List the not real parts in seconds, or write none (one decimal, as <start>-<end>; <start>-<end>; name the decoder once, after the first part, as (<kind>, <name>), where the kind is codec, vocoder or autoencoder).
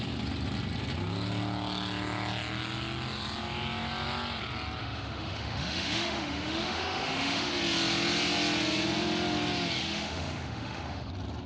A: 4.8-7.5 (autoencoder, DAC-VAE); 9.8-11.1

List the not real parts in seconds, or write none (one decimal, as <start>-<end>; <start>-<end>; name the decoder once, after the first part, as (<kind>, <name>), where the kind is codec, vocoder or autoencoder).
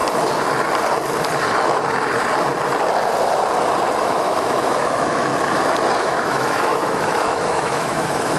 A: 4.0-5.3 (autoencoder, DAC-VAE); 6.0-8.4